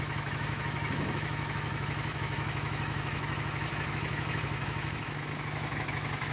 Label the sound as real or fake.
fake